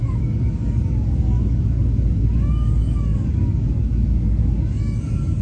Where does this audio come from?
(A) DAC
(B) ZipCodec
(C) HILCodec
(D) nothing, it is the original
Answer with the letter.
A